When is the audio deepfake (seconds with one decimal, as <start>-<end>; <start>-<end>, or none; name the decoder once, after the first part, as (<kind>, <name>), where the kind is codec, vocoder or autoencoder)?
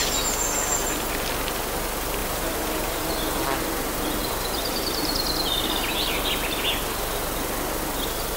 2.2-3.1 (vocoder, BigVGAN v2); 4.2-5.3